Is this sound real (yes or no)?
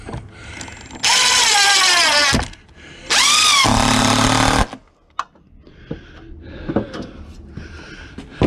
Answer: yes